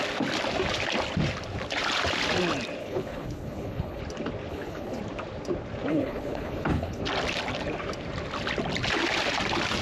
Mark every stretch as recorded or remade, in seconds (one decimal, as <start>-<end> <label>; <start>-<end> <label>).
0.0-2.8 recorded; 2.8-4.0 remade; 4.0-4.5 recorded; 4.5-5.0 remade; 5.0-5.9 recorded; 5.9-7.0 remade; 7.0-9.8 recorded